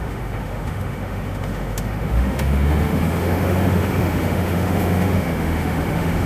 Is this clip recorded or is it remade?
remade